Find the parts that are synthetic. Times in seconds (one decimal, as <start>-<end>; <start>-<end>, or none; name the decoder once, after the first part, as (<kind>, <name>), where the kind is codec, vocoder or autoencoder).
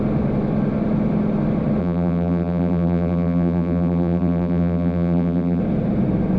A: 1.8-5.6 (vocoder, BigVGAN v2)